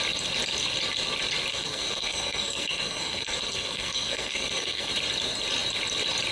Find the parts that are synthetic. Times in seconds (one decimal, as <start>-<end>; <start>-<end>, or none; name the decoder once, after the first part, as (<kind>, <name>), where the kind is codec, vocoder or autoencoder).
1.5-4.9 (codec, SNAC)